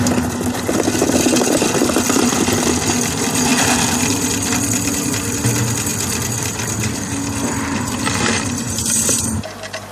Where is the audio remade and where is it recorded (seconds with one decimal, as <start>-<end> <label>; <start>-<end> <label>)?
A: 0.0-9.9 recorded